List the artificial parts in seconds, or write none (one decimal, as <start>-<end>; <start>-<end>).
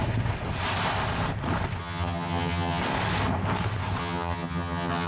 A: 1.8-2.8; 4.0-5.1